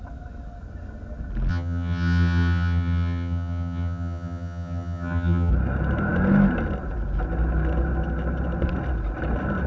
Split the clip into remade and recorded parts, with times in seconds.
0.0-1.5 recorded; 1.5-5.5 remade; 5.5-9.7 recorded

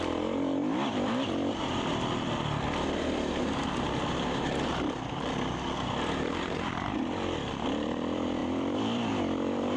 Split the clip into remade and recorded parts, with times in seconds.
0.0-8.4 recorded; 8.4-9.1 remade; 9.1-9.8 recorded